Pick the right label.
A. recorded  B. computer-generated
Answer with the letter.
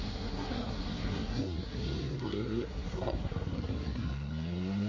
B